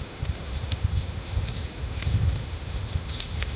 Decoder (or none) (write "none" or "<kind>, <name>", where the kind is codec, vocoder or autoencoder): autoencoder, DAC-VAE